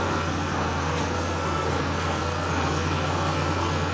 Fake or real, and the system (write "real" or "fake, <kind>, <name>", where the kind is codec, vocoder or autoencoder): fake, codec, SNAC